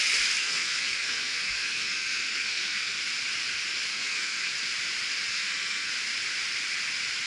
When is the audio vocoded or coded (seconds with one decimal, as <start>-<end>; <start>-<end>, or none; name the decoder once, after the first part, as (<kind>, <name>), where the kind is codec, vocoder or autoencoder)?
0.4-3.0 (codec, SNAC); 3.9-4.5; 5.3-5.9